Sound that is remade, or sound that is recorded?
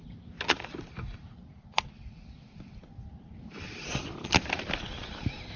remade